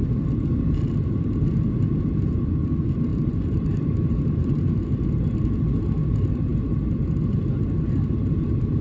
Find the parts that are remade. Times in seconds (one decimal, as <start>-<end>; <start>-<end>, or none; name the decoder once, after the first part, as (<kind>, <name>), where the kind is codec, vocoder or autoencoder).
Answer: 3.1-4.7 (vocoder, BigVGAN v2)